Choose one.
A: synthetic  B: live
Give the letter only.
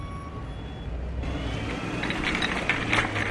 B